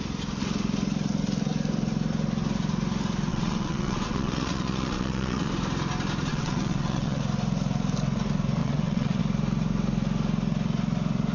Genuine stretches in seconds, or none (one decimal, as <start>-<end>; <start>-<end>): 0.0-3.3; 5.5-6.3; 7.2-8.6; 9.2-11.3